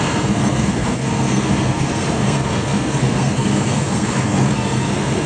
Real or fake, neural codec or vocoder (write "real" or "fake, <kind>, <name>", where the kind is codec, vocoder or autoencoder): fake, codec, SNAC